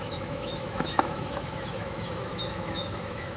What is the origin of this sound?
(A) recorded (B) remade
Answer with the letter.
B